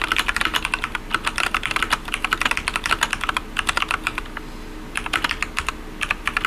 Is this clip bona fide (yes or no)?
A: yes